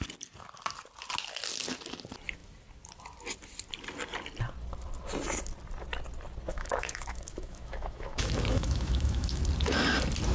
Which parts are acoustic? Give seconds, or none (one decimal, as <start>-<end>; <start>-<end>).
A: 0.0-6.5; 9.4-10.3